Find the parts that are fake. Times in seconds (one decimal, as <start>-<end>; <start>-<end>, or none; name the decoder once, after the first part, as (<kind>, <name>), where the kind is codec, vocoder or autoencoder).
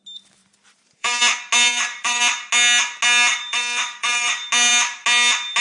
0.4-1.2 (vocoder, BigVGAN v2); 1.7-2.2; 3.3-4.3